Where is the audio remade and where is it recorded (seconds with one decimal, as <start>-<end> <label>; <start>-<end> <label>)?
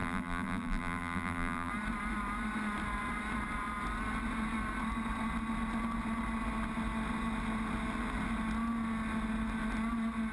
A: 0.0-1.7 remade; 1.7-10.3 recorded